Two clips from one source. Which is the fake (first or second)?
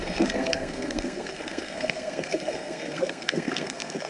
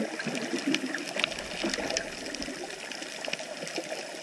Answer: first